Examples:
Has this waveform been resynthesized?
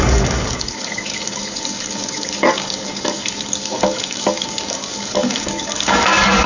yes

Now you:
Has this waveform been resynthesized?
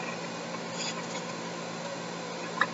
no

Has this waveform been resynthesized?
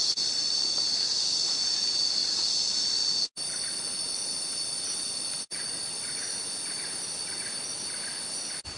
no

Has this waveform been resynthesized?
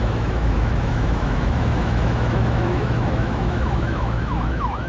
yes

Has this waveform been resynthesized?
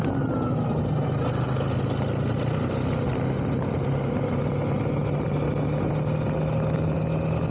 no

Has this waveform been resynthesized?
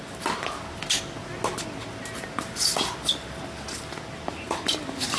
no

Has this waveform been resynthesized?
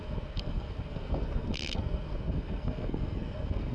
yes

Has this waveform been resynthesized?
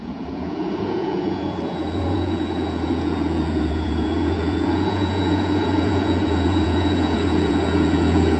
yes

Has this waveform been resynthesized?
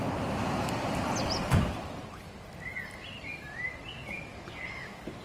no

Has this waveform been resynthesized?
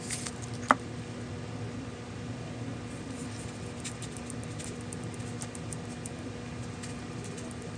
no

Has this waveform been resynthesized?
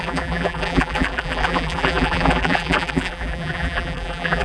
yes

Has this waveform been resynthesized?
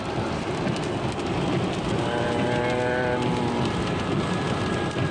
no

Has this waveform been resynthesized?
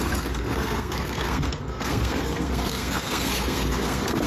yes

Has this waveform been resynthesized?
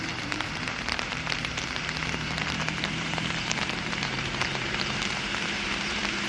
yes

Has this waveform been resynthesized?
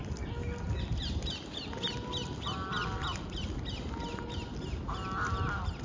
no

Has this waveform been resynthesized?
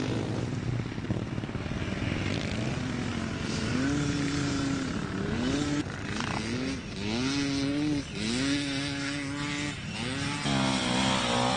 no